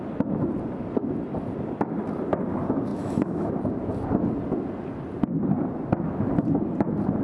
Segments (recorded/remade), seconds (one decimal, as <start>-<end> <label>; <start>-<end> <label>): 0.0-2.9 recorded; 2.9-3.5 remade; 3.5-7.2 recorded